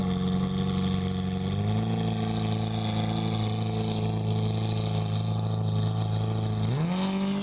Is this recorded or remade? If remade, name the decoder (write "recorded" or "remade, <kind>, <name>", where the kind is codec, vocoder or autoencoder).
recorded